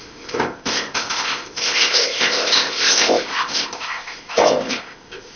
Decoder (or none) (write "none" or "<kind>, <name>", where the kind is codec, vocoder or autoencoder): codec, ZipCodec